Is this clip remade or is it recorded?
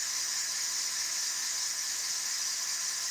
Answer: remade